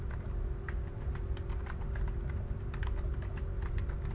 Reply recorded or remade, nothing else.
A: recorded